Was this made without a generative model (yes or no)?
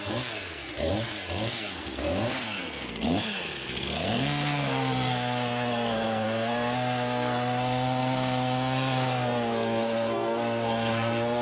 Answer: no